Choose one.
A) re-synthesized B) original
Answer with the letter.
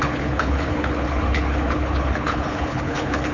A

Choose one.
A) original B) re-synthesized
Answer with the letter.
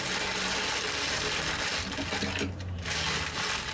A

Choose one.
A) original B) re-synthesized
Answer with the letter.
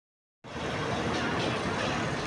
A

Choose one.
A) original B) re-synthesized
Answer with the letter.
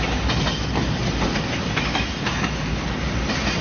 A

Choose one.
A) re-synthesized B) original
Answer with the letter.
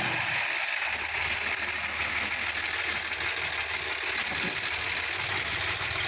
B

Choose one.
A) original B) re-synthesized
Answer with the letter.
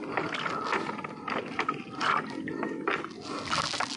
A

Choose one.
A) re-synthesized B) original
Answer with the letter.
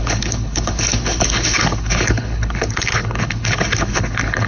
A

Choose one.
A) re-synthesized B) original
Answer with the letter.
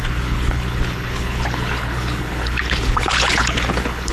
A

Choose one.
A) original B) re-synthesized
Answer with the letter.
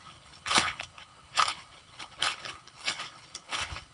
B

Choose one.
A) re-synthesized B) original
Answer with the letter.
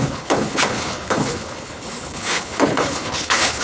A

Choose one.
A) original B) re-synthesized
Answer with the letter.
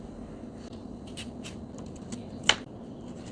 A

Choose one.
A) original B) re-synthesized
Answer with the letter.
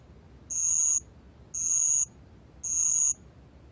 A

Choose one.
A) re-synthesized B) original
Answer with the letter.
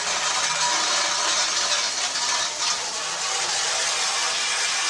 B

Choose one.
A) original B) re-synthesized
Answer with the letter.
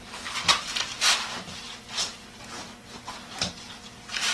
A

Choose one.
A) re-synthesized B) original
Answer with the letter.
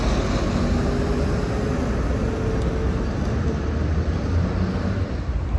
B